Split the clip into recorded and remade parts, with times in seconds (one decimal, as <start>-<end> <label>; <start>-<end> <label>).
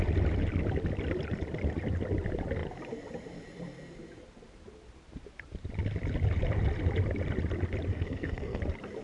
0.0-7.9 recorded; 7.9-8.6 remade; 8.6-9.0 recorded